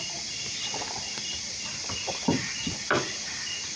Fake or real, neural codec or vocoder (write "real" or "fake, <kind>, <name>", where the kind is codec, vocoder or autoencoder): real